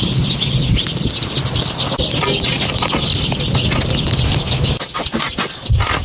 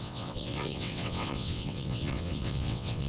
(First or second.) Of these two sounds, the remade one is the second